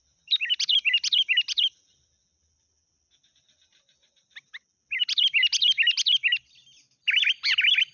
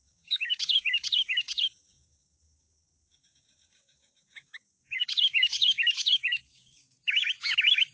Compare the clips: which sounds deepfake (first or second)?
second